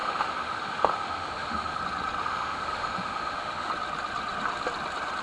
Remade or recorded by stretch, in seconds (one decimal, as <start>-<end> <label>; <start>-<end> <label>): 0.0-1.8 remade; 1.8-2.2 recorded; 2.2-3.7 remade; 3.7-5.2 recorded